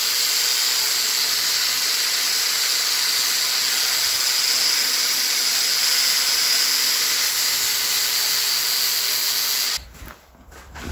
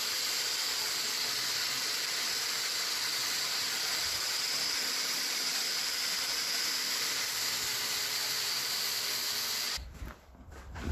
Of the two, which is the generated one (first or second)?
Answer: second